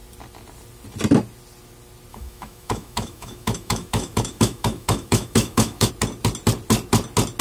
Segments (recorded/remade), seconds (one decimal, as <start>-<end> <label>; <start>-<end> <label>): 0.0-2.1 recorded; 2.1-5.9 remade; 5.9-7.4 recorded